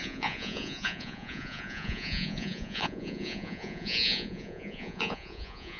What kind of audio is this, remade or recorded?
remade